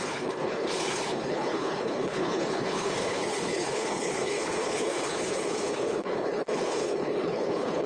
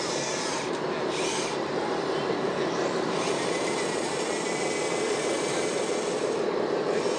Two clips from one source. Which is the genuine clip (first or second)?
second